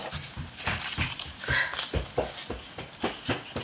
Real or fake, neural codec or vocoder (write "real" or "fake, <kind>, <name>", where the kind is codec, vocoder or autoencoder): real